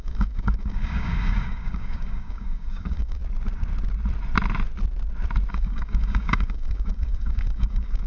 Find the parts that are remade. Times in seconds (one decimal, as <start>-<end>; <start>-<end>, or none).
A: 0.0-3.2; 5.5-8.1